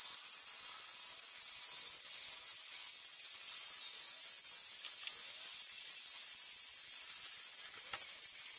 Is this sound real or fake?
real